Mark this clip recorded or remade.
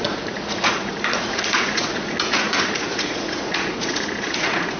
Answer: remade